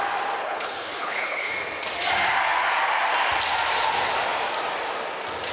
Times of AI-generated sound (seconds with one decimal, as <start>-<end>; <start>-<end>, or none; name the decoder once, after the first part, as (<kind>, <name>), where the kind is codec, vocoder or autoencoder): 0.4-1.5 (codec, HILCodec)